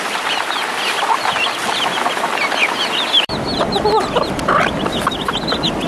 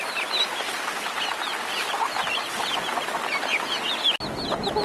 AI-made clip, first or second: first